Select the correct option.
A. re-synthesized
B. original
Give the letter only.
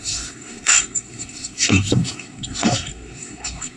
A